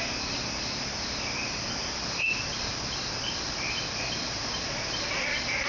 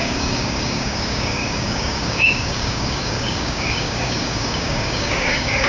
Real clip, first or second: first